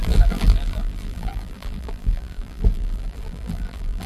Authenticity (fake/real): fake